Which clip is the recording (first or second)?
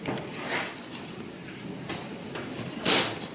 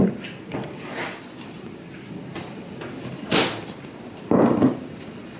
second